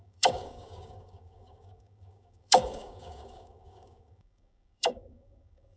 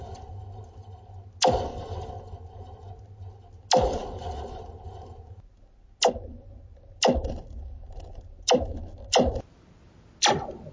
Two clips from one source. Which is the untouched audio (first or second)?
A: second